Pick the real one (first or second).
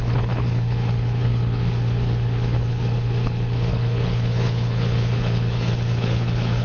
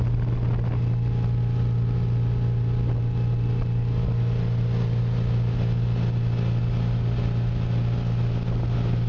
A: second